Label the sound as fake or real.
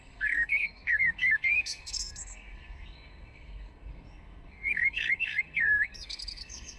fake